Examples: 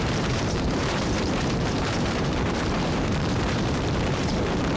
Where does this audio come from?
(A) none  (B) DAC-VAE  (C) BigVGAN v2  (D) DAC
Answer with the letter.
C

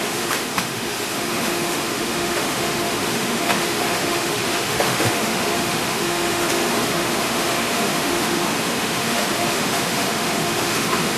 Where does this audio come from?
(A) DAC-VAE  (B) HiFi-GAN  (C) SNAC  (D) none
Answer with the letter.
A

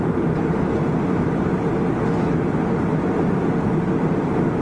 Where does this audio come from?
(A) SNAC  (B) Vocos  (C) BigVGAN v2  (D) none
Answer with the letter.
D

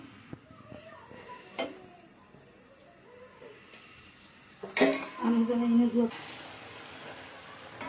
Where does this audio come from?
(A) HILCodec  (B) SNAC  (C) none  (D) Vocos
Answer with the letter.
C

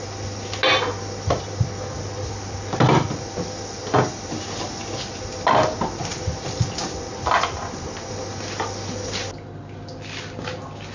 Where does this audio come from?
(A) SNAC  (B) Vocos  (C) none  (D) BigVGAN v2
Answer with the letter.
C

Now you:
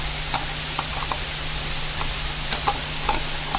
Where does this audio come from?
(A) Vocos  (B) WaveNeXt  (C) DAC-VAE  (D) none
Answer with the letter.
D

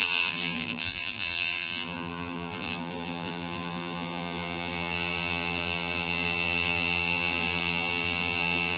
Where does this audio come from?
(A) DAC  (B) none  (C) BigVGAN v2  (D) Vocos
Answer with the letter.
C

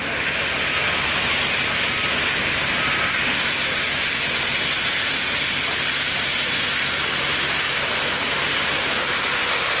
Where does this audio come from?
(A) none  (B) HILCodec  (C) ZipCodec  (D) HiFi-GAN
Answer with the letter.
A